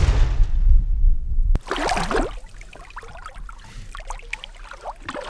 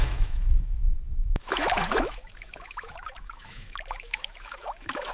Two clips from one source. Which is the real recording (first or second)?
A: first